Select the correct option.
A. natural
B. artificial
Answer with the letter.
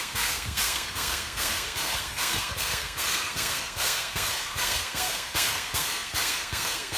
B